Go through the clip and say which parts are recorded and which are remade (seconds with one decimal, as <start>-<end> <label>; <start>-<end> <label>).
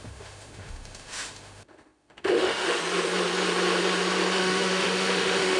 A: 0.0-2.8 remade; 2.8-4.4 recorded; 4.4-5.6 remade